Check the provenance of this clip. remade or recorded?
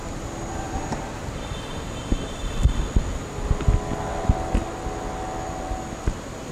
recorded